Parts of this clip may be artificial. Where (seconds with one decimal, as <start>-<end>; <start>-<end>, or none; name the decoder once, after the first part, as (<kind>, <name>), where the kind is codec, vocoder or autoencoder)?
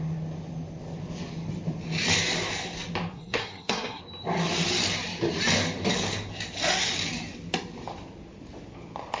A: 3.1-4.0 (codec, SNAC)